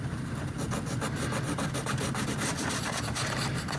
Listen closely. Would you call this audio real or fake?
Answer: real